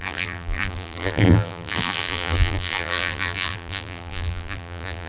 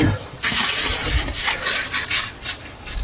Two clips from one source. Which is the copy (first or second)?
first